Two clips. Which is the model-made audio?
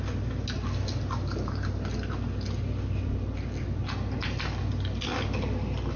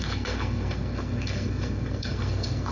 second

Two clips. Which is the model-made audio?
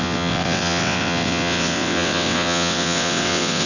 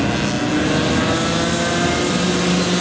first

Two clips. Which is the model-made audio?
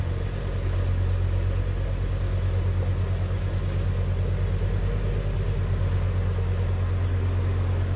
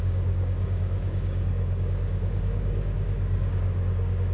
second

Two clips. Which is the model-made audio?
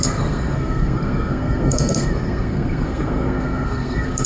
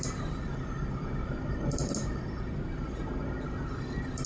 first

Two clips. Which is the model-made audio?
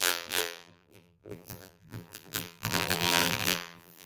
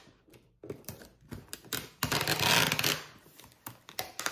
first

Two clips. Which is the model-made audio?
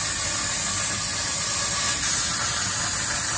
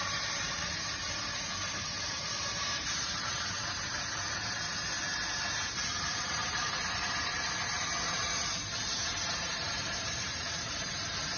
second